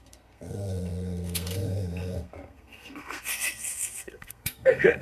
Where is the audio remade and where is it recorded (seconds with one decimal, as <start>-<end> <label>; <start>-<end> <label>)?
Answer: 0.0-5.0 remade